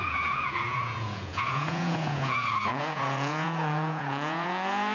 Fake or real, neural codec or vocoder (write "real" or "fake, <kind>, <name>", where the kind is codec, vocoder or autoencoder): fake, vocoder, Vocos